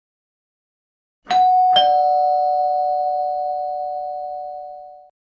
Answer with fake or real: real